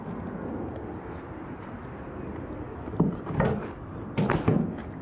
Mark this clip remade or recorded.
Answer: recorded